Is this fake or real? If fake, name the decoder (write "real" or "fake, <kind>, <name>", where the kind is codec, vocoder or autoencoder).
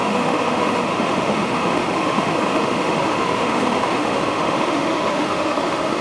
fake, autoencoder, DAC-VAE